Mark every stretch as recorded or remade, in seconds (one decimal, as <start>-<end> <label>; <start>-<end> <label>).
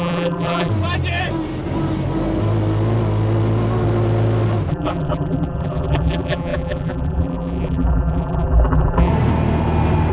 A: 0.0-0.7 remade; 0.7-4.7 recorded; 4.7-9.1 remade; 9.1-10.1 recorded